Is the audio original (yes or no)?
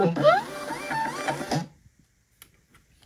yes